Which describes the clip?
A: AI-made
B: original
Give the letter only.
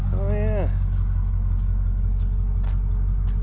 B